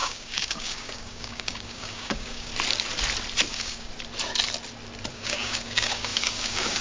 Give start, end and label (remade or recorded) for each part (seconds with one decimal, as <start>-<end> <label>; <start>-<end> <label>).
0.0-2.5 remade; 2.5-3.5 recorded; 3.5-3.9 remade; 3.9-5.1 recorded; 5.1-6.8 remade